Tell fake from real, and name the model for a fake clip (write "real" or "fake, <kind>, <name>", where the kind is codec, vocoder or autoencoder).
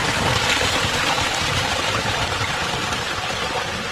real